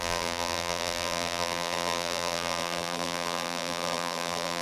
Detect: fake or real fake